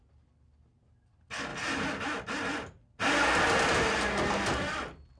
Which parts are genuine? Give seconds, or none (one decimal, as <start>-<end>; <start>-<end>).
0.0-5.2